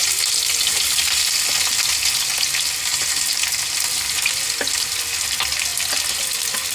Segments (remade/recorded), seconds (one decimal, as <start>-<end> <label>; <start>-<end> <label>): 0.0-2.9 recorded; 2.9-4.3 remade; 4.3-6.7 recorded